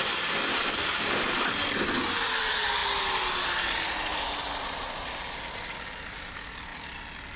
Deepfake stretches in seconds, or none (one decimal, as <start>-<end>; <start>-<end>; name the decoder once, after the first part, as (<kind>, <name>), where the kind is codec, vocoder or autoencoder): none